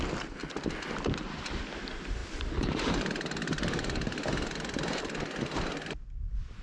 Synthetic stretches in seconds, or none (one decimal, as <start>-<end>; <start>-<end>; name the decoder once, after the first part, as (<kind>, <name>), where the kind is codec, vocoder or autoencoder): none